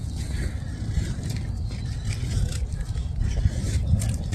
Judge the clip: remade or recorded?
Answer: recorded